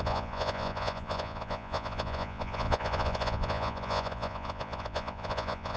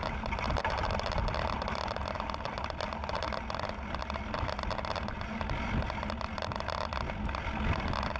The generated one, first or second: first